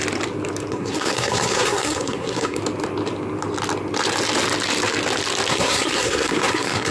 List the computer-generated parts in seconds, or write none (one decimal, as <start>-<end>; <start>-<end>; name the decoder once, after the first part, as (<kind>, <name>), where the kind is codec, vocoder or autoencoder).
0.7-2.6 (codec, SNAC); 5.5-6.9